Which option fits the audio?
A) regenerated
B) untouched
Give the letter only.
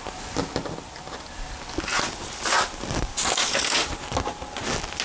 B